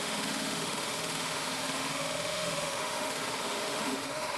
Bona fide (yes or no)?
no